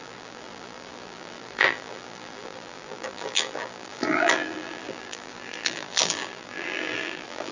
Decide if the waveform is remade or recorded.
remade